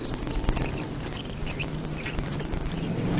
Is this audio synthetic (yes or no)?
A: no